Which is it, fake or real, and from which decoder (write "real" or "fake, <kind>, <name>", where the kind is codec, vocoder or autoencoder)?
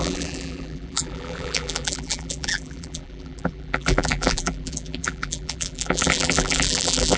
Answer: fake, vocoder, BigVGAN v2